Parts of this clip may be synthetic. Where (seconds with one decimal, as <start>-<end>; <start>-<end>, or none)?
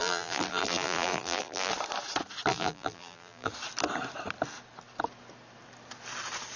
0.0-1.7; 2.5-3.5